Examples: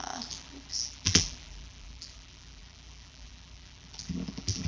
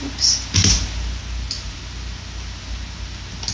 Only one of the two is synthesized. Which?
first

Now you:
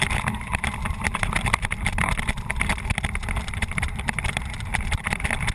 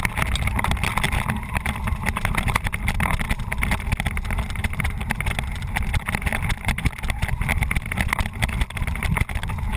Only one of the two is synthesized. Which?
first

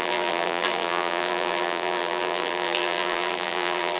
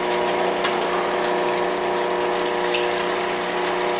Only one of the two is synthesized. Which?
first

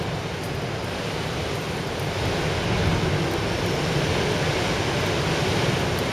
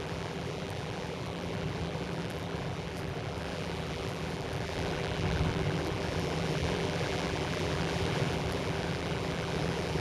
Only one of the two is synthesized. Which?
second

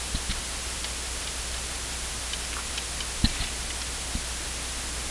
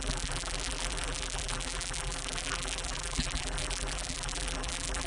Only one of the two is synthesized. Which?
second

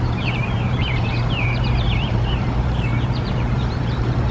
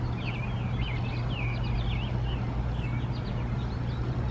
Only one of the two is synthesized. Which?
first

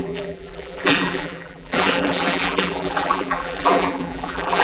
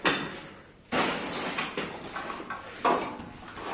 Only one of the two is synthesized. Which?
first